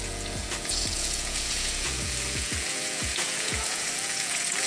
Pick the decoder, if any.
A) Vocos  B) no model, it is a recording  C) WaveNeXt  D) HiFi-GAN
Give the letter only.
A